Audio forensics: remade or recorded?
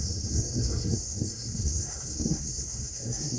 remade